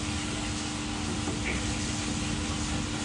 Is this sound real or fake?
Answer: real